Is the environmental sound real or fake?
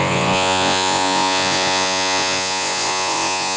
fake